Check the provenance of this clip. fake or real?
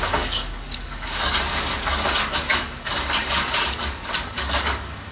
fake